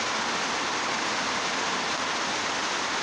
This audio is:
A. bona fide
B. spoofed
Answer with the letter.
A